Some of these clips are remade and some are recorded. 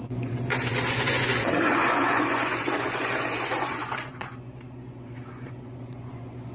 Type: remade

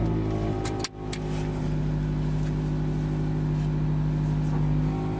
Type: recorded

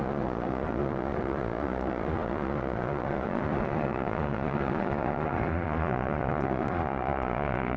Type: remade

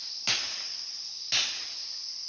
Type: recorded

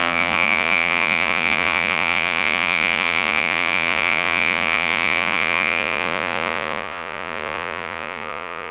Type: remade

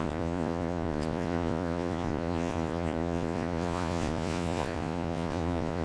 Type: remade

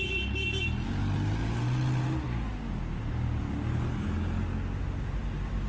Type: recorded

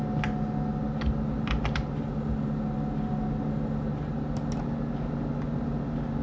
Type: recorded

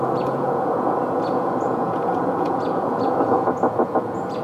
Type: remade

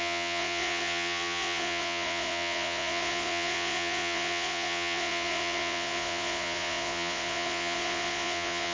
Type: remade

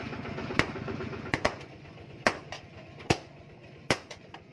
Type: remade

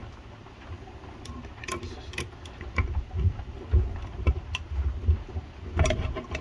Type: recorded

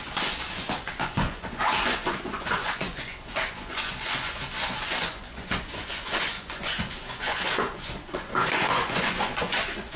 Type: remade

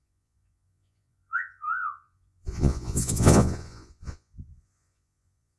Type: remade